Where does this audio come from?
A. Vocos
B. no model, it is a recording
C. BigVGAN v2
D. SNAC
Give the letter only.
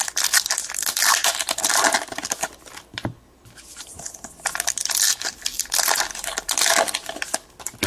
B